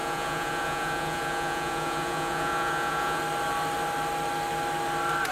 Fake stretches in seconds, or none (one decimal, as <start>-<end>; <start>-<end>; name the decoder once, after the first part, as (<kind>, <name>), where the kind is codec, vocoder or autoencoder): 0.0-3.2 (vocoder, Vocos)